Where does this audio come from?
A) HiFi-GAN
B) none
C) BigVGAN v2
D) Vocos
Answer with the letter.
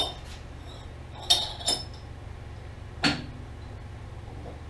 B